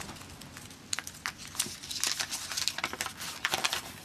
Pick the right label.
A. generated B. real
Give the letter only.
B